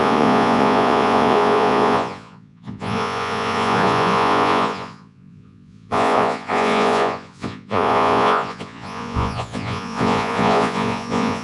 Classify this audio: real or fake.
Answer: fake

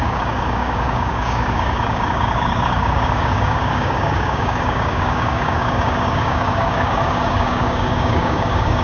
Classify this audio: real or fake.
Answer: fake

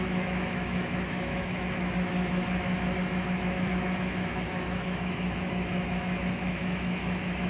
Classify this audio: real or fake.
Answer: fake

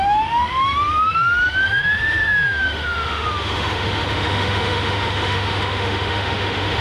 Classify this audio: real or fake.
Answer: fake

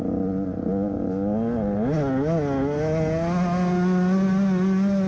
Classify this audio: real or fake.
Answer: real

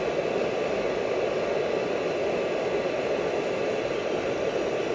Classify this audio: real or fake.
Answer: real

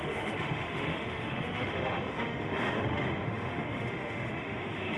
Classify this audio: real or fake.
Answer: fake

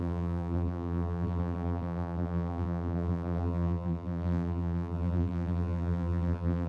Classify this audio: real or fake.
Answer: fake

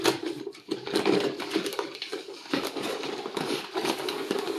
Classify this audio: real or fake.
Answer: fake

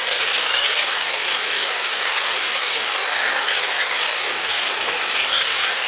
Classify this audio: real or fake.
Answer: fake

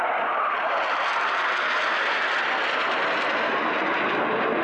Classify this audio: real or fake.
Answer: real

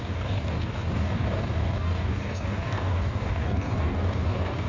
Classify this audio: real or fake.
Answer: fake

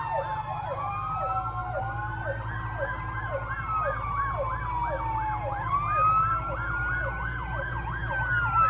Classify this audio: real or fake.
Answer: real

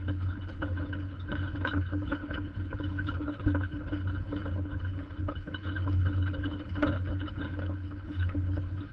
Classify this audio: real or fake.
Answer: fake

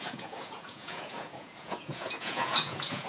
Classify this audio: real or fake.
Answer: fake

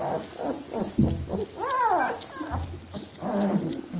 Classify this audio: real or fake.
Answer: real